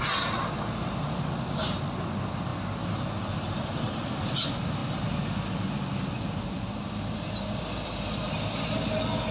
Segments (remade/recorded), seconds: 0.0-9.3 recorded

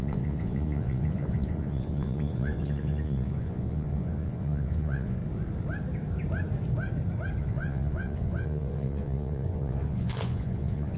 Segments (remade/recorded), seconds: 0.0-5.2 remade; 5.2-7.4 recorded; 7.4-11.0 remade

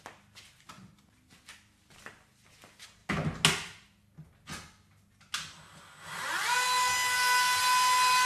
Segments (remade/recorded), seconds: 0.0-8.3 recorded

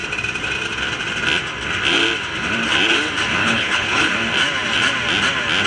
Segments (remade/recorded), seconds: 0.0-3.4 recorded; 3.4-4.1 remade; 4.1-5.7 recorded

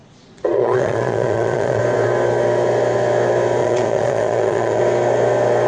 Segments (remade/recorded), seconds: 0.0-1.8 remade; 1.8-3.6 recorded; 3.6-4.8 remade; 4.8-5.7 recorded